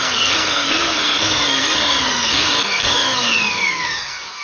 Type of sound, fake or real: fake